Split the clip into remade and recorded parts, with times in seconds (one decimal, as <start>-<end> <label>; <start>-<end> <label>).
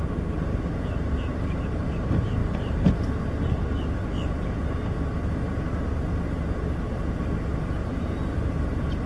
0.0-2.4 remade; 2.4-7.5 recorded; 7.5-9.1 remade